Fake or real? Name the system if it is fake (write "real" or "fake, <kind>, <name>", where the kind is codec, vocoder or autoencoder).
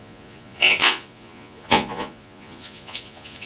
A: fake, vocoder, Vocos